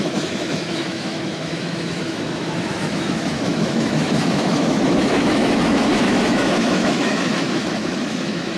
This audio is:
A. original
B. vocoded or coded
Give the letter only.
B